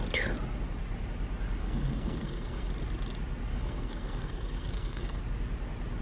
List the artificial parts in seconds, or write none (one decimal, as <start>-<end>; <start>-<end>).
1.6-2.7; 3.5-5.2